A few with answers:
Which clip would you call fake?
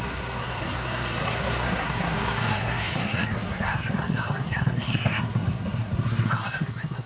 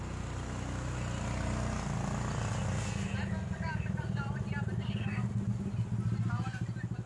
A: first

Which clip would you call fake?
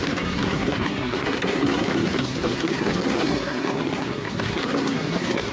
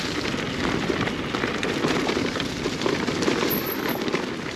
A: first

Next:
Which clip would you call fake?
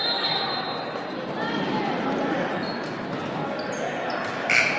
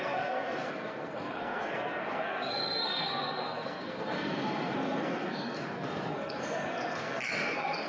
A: second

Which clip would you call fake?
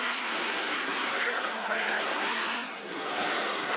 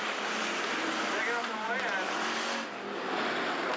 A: first